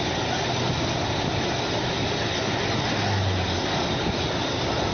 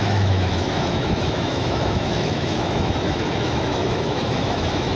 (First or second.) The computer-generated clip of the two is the second